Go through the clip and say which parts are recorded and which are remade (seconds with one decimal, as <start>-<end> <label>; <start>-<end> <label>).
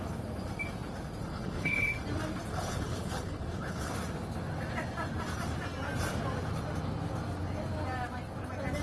0.0-1.2 recorded; 1.2-2.0 remade; 2.0-2.5 recorded; 2.5-3.9 remade; 3.9-8.8 recorded